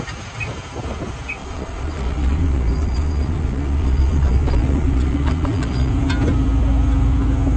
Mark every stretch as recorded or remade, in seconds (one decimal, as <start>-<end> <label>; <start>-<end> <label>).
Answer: 0.0-1.4 recorded; 1.4-5.9 remade; 5.9-7.6 recorded